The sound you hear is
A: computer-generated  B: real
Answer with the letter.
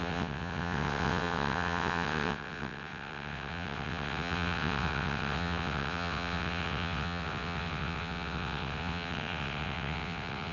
A